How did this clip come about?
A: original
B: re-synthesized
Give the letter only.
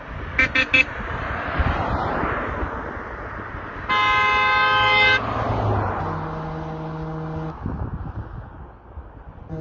A